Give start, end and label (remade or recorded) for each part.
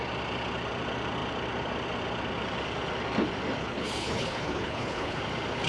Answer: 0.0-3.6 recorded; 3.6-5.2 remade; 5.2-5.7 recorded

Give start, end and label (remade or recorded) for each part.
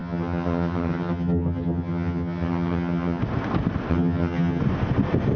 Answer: 0.0-3.2 remade; 3.2-3.9 recorded; 3.9-4.6 remade; 4.6-5.4 recorded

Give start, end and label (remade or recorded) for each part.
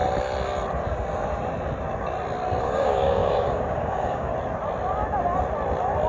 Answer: 0.0-2.6 recorded; 2.6-4.3 remade; 4.3-6.1 recorded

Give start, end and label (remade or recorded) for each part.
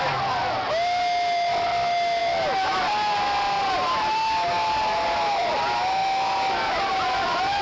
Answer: 0.0-7.6 recorded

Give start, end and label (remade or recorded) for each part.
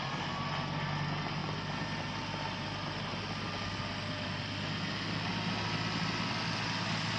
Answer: 0.0-7.2 recorded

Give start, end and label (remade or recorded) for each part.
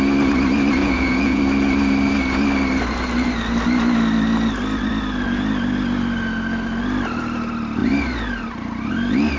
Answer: 0.0-0.8 recorded; 0.8-1.4 remade; 1.4-9.4 recorded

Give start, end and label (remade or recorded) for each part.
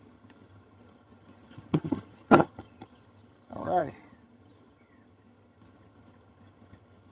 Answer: 0.0-7.1 remade